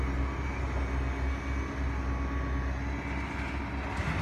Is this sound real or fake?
real